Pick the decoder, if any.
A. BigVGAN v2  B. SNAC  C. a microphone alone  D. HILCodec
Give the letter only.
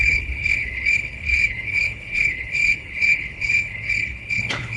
D